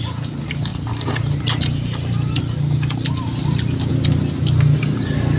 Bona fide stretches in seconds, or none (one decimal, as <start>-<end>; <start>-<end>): 0.0-5.4